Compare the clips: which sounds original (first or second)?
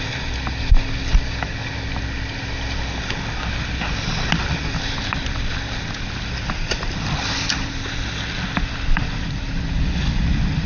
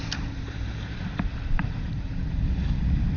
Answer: first